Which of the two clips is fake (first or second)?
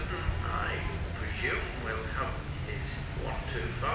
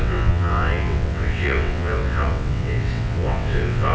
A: second